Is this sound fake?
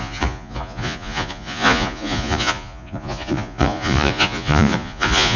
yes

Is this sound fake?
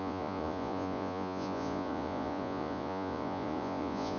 yes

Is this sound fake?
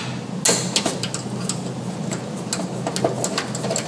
no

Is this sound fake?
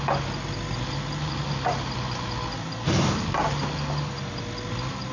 no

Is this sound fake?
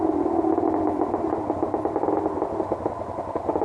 no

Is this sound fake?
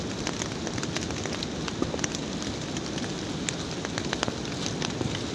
no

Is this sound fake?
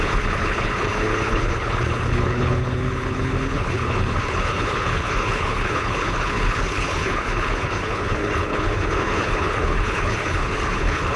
yes